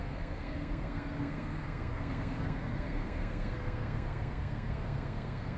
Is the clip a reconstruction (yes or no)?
yes